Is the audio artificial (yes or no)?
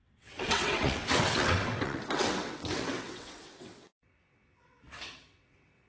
yes